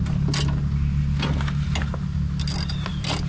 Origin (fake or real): real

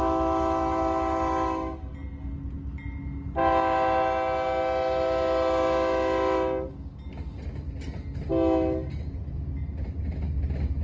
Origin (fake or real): real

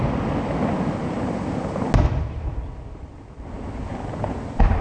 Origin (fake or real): real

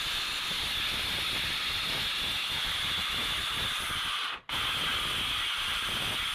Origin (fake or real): real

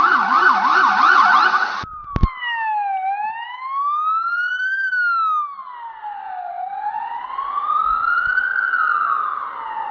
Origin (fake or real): real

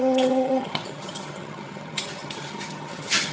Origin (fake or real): fake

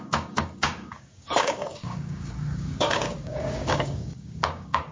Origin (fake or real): fake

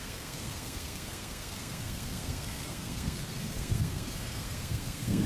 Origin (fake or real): fake